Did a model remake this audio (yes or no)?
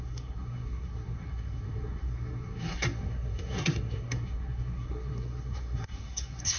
yes